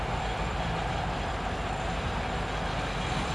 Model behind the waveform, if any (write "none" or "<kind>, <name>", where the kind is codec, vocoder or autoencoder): none